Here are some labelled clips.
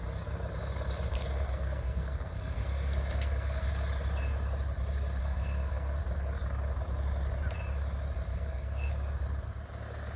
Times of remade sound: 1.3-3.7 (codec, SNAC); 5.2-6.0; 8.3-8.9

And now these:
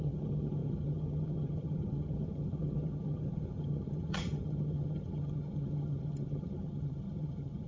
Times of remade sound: 0.0-7.7 (vocoder, HiFi-GAN)

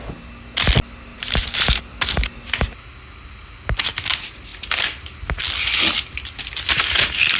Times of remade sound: 1.1-1.8 (vocoder, BigVGAN v2)